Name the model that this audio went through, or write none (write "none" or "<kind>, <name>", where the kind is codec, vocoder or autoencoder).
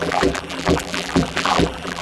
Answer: vocoder, BigVGAN v2